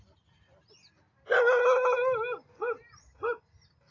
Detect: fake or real real